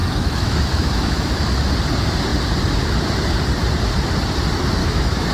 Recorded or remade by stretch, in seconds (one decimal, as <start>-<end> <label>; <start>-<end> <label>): 0.0-1.7 remade; 1.7-4.8 recorded; 4.8-5.3 remade